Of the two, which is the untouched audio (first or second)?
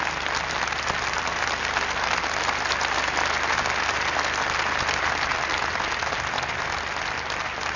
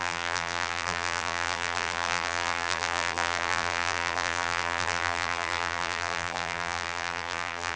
first